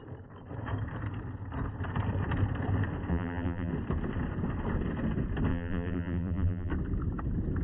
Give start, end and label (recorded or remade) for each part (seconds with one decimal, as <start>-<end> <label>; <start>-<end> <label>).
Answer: 0.0-3.1 recorded; 3.1-3.7 remade; 3.7-5.5 recorded; 5.5-6.7 remade; 6.7-7.6 recorded